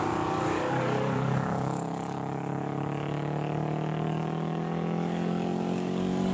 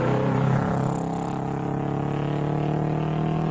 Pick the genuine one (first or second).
second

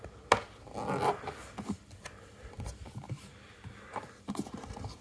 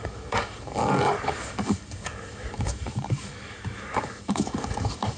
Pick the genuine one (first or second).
first